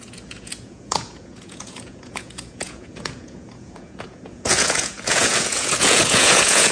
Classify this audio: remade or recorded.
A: remade